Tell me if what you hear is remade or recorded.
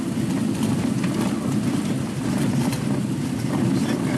recorded